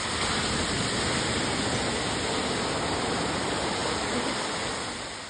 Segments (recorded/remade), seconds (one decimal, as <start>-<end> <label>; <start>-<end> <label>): 0.0-3.8 recorded; 3.8-4.3 remade; 4.3-5.3 recorded